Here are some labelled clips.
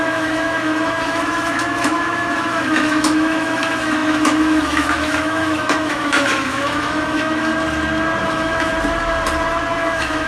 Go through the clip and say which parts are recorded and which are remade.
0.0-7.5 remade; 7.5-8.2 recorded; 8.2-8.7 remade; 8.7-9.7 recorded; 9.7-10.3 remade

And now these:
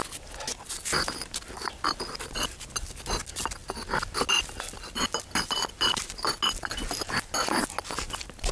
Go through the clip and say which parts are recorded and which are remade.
0.0-8.5 recorded

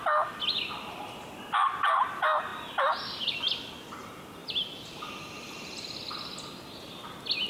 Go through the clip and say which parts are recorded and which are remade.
0.0-7.5 recorded

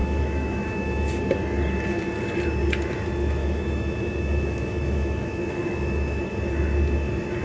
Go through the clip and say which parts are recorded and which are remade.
0.0-1.2 remade; 1.2-3.4 recorded; 3.4-6.2 remade; 6.2-7.4 recorded